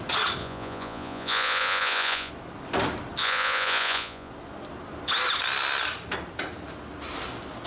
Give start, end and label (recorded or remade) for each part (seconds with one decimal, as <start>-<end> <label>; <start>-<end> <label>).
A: 0.0-0.4 recorded; 0.4-2.3 remade; 2.3-3.2 recorded; 3.2-4.3 remade; 4.3-7.7 recorded